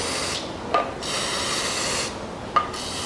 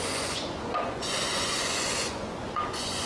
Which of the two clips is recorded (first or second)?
first